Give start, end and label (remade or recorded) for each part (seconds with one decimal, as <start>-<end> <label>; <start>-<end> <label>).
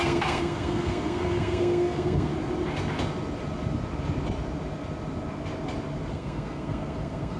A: 0.0-2.3 remade; 2.3-6.1 recorded; 6.1-7.4 remade